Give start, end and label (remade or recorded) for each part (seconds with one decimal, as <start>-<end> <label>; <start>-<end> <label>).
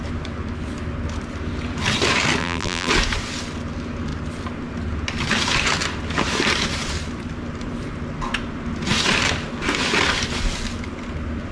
0.0-2.4 recorded; 2.4-2.9 remade; 2.9-11.5 recorded